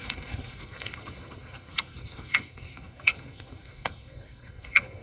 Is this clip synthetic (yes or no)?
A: yes